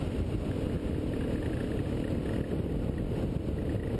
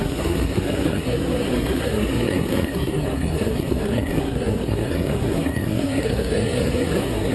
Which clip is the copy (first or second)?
second